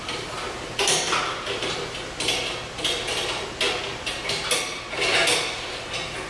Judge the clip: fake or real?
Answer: real